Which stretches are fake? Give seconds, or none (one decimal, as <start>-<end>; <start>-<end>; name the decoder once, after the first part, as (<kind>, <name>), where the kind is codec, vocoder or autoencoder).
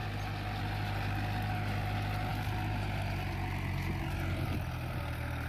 none